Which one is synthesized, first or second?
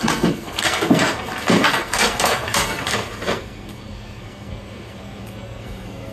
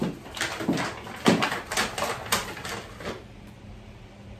first